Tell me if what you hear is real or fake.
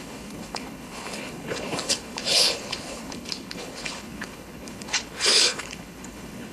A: fake